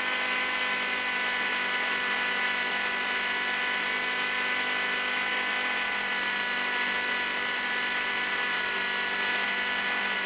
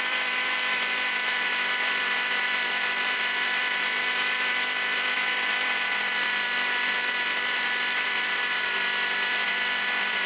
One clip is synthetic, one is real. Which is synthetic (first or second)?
second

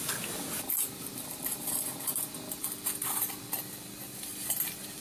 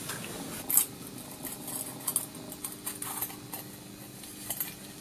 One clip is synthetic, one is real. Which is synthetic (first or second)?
first